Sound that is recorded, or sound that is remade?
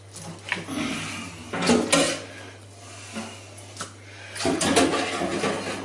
recorded